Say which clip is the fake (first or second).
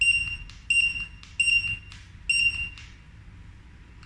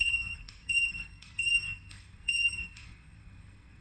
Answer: second